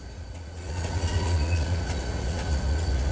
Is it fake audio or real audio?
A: fake